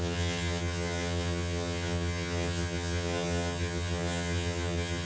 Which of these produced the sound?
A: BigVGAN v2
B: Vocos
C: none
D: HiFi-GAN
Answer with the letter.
D